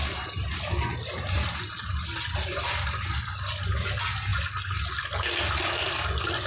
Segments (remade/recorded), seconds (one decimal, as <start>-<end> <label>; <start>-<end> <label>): 0.0-6.5 recorded